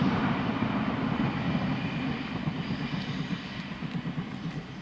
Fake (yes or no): no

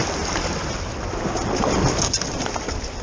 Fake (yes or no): no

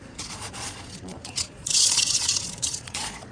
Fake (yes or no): yes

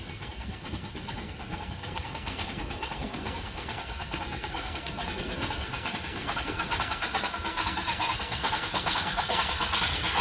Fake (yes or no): yes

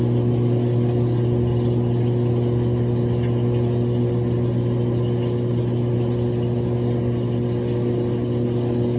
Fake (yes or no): no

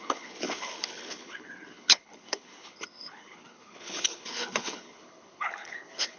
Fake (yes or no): yes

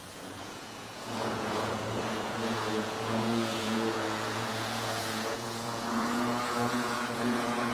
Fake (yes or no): yes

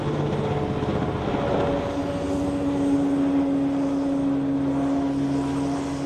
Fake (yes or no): no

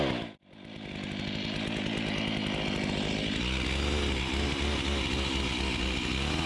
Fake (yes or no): no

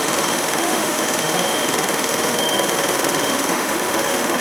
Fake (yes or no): yes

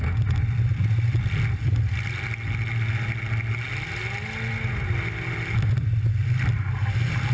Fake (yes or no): no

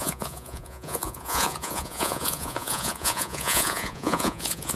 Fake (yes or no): yes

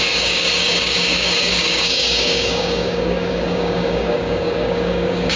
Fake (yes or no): yes